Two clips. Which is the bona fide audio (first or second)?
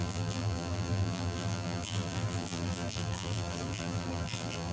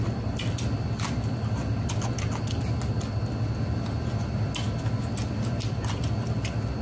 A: second